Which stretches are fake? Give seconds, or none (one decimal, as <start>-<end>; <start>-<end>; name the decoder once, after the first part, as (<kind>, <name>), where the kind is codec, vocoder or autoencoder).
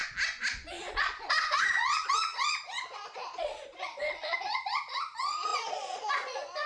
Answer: 0.8-6.7 (vocoder, Vocos)